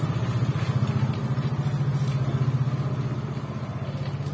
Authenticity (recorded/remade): recorded